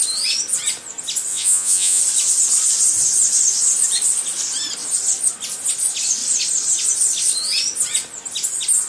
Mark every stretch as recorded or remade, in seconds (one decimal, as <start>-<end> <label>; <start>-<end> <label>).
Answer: 0.0-1.3 recorded; 1.3-2.0 remade; 2.0-8.9 recorded